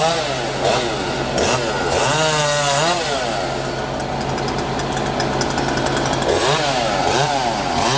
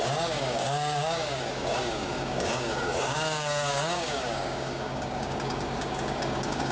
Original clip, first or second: first